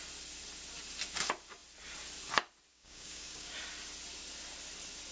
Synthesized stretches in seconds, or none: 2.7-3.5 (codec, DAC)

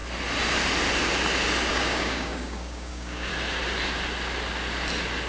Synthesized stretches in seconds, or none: 1.7-3.3 (codec, DAC)

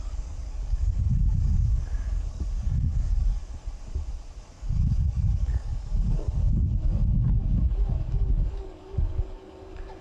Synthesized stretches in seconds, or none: 0.0-3.4 (codec, DAC); 4.4-10.0

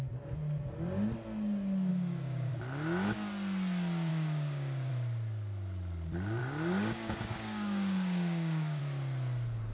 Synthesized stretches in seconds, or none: 1.9-2.5 (codec, DAC); 4.1-4.9; 6.4-8.8

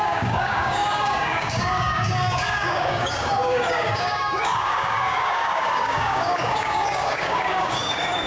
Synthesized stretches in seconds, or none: 0.0-8.3 (codec, DAC)

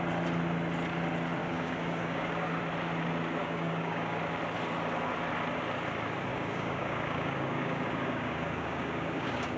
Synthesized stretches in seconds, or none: 1.4-2.6 (codec, DAC); 3.4-4.2; 6.3-9.6